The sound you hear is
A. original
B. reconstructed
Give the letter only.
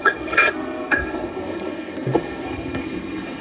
B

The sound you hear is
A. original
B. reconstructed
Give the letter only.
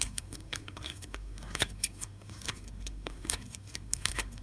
B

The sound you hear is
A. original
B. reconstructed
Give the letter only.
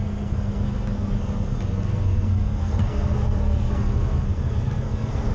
B